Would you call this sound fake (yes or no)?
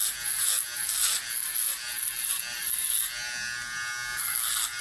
no